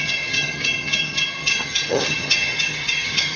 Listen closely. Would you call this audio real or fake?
fake